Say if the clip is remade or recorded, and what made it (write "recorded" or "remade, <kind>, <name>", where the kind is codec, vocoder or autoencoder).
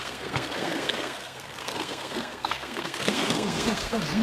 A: remade, codec, SNAC